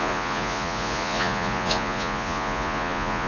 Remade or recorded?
remade